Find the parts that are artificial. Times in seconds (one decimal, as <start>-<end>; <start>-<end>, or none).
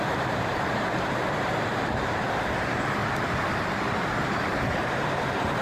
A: 0.0-3.0; 4.1-5.6